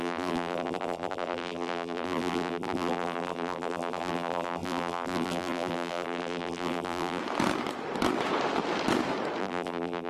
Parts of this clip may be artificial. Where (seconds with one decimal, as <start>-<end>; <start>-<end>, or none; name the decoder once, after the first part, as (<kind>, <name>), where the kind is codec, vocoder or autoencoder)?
0.0-7.2 (vocoder, BigVGAN v2); 9.4-10.1